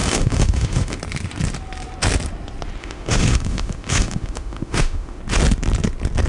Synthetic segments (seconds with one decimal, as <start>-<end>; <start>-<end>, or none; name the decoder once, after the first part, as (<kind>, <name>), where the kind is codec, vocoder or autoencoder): 0.0-1.0 (autoencoder, DAC-VAE); 2.8-5.2